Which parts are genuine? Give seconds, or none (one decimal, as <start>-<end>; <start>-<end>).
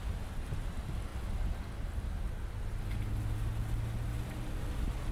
0.0-5.1